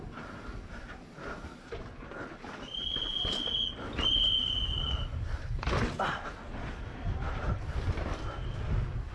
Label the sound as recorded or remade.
recorded